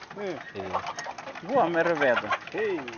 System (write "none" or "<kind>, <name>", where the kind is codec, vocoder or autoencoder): none